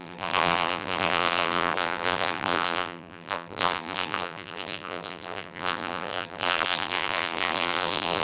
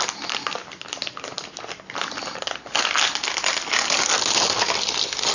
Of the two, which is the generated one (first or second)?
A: first